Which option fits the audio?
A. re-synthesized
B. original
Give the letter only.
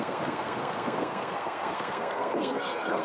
A